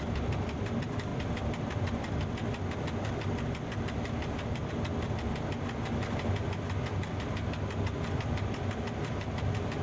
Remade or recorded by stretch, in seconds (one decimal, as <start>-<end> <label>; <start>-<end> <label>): 0.0-9.8 recorded